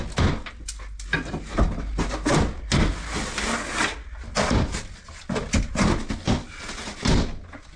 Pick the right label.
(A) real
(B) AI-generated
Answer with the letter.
A